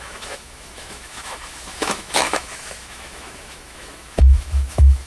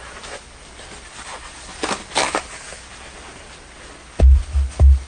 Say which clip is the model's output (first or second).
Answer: first